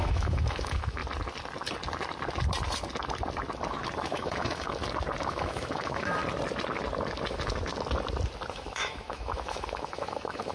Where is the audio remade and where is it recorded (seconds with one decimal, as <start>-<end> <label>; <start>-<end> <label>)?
0.0-1.0 remade; 1.0-4.1 recorded; 4.1-4.8 remade; 4.8-5.3 recorded; 5.3-6.2 remade; 6.2-8.5 recorded; 8.5-10.5 remade

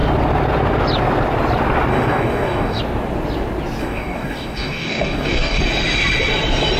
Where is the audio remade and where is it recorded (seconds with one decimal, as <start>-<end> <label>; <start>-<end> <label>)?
0.0-1.9 recorded; 1.9-2.8 remade; 2.8-3.8 recorded; 3.8-5.6 remade; 5.6-6.8 recorded